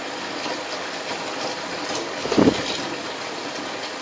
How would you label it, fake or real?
real